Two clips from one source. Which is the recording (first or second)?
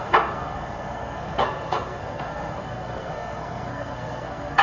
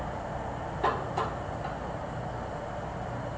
second